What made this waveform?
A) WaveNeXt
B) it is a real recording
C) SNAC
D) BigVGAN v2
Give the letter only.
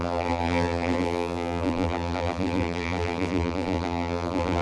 D